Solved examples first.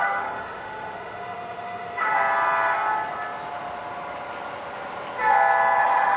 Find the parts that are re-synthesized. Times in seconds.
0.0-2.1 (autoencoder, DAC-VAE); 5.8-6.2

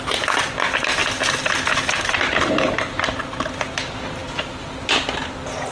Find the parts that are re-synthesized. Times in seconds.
none

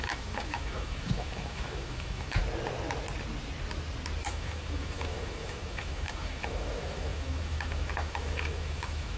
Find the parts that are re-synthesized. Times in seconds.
0.0-2.4 (autoencoder, DAC-VAE); 4.3-9.2

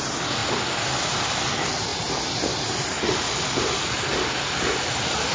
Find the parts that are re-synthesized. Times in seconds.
none